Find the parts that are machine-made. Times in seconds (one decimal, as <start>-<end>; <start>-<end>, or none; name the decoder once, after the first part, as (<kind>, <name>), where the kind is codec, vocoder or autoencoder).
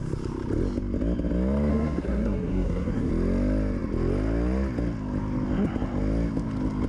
1.7-3.1 (codec, SNAC)